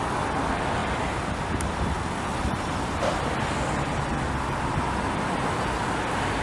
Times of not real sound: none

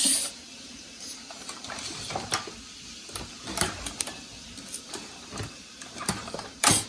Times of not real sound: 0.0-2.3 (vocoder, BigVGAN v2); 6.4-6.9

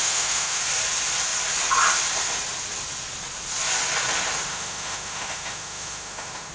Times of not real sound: 0.0-0.6 (autoencoder, DAC-VAE); 4.5-6.5

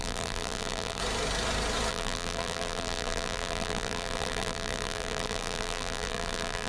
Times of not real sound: 0.0-1.0 (vocoder, BigVGAN v2); 1.9-6.7

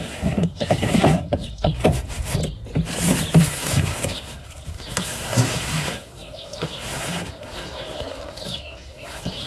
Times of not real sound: 0.0-2.4 (codec, SNAC); 3.4-9.5

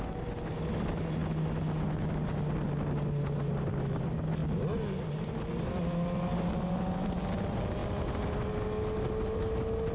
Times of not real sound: none

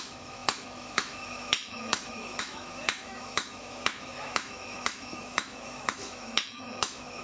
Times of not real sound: 0.0-7.2 (autoencoder, DAC-VAE)